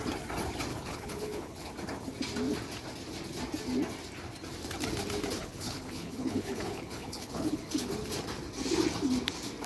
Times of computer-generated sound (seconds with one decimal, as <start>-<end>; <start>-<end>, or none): 0.7-1.7; 5.4-7.9